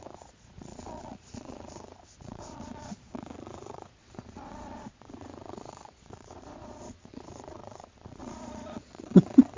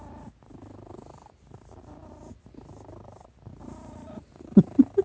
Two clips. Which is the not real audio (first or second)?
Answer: first